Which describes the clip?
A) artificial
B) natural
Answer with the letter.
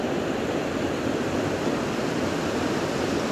B